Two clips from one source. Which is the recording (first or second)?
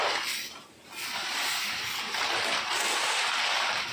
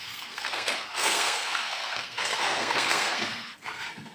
first